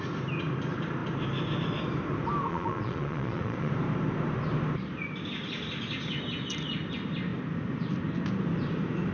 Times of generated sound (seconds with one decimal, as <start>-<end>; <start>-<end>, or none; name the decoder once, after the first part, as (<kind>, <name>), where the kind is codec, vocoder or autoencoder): 2.5-3.7 (vocoder, Vocos)